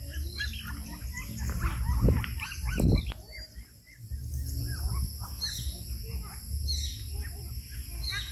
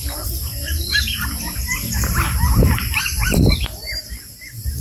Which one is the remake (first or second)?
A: second